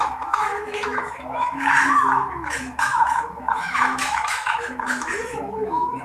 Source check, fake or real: fake